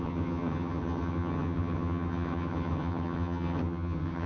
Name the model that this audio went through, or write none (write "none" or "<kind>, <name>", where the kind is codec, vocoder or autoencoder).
vocoder, HiFi-GAN